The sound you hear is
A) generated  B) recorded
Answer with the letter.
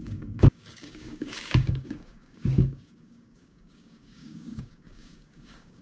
A